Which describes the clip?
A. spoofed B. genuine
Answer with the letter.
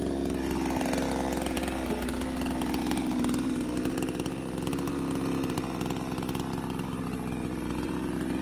B